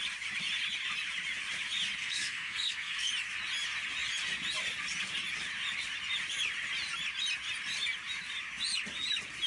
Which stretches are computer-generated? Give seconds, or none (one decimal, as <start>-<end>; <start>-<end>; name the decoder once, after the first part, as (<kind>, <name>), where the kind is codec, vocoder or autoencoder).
2.0-3.1 (codec, SNAC)